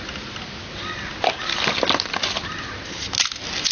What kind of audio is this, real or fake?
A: real